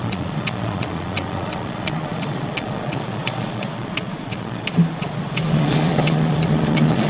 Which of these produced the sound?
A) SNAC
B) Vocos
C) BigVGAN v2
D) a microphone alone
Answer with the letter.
B